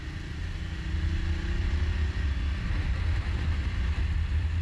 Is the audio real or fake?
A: real